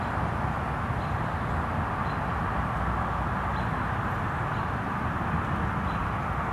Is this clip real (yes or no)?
yes